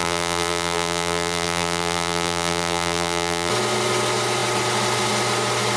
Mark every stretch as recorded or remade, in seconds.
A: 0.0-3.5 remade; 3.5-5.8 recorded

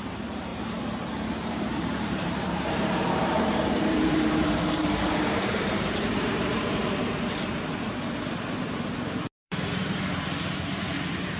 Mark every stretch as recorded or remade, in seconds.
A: 0.0-0.5 remade; 0.5-1.5 recorded; 1.5-6.8 remade; 6.8-9.4 recorded; 9.4-11.4 remade

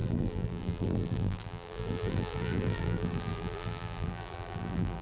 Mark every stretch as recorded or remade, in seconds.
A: 0.0-5.0 remade

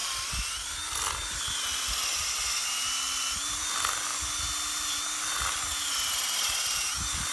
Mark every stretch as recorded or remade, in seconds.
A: 0.0-7.3 recorded

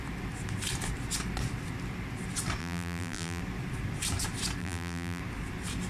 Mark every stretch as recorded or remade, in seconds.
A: 0.0-2.6 recorded; 2.6-3.4 remade; 3.4-4.6 recorded; 4.6-5.2 remade; 5.2-5.9 recorded